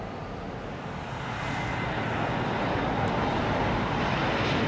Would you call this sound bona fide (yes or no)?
yes